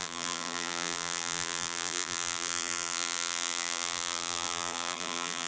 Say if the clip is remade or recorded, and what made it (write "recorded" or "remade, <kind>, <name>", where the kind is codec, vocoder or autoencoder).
remade, vocoder, BigVGAN v2